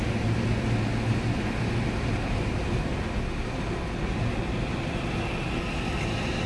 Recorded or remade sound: recorded